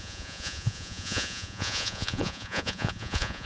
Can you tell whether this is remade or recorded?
remade